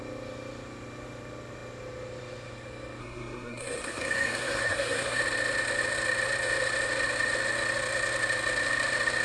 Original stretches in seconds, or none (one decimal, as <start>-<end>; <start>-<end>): 0.0-3.0; 5.2-9.2